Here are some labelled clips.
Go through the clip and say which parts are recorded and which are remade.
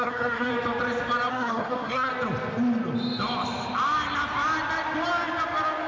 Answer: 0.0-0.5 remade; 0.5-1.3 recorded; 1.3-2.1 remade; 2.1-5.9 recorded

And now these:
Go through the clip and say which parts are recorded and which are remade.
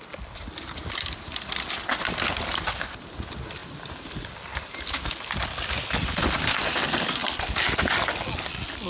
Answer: 0.0-8.9 recorded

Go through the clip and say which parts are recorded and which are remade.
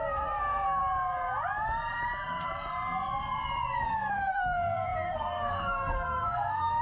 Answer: 0.0-0.8 remade; 0.8-4.1 recorded; 4.1-6.8 remade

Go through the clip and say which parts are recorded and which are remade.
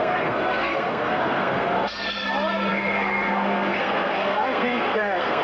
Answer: 0.0-5.4 remade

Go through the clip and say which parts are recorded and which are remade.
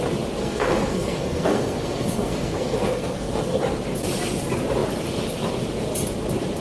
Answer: 0.0-0.4 recorded; 0.4-3.6 remade; 3.6-6.6 recorded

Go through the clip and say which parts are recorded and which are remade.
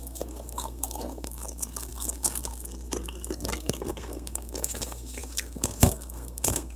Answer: 0.0-6.8 remade